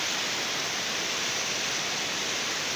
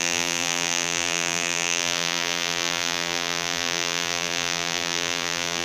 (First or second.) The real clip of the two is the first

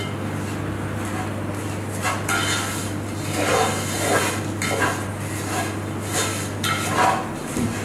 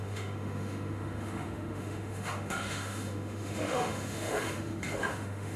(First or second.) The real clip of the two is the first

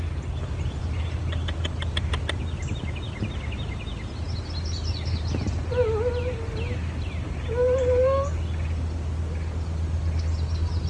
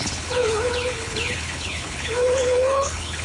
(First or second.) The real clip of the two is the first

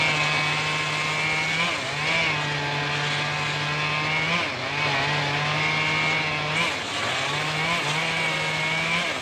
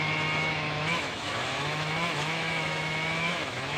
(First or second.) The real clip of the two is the first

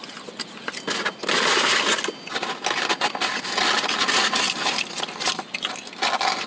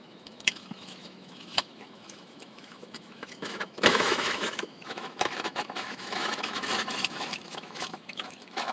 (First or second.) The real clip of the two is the first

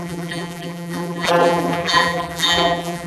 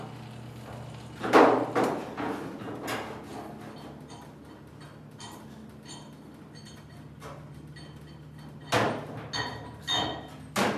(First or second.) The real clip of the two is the second